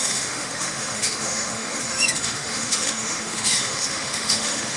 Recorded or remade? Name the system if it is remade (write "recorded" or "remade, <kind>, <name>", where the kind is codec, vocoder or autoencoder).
remade, autoencoder, DAC-VAE